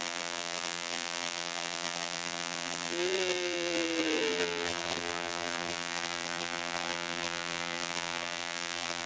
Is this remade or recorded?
remade